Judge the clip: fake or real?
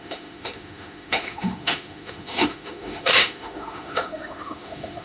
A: fake